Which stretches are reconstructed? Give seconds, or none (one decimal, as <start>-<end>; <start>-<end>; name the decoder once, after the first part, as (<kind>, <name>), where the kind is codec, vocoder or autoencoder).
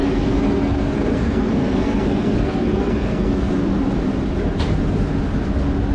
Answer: 0.0-3.5 (codec, SNAC)